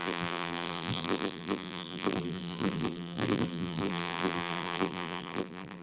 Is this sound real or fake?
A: fake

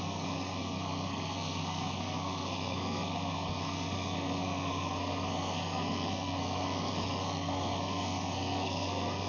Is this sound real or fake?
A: fake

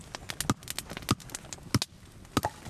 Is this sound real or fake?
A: real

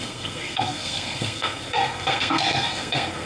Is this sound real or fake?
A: fake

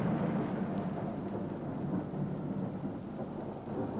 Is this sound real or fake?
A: real